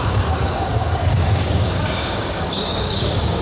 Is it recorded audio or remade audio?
remade